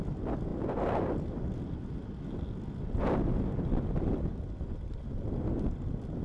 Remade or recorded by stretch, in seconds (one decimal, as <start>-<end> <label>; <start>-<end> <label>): 0.0-6.2 recorded